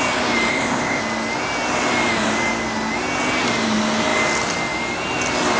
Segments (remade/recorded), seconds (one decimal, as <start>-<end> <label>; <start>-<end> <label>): 0.0-0.5 recorded; 0.5-1.0 remade; 1.0-5.6 recorded